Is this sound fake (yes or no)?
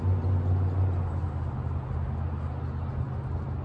no